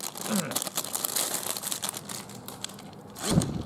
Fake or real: real